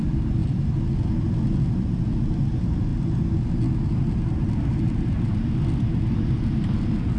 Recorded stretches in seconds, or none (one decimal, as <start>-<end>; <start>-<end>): 0.0-7.2